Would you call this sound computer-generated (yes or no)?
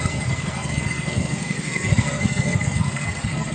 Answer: yes